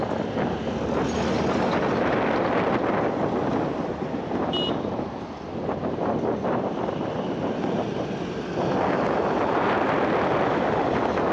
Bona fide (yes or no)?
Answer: yes